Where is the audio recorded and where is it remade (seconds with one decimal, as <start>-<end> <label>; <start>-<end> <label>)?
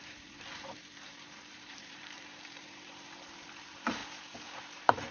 0.0-4.0 remade; 4.0-4.6 recorded; 4.6-5.1 remade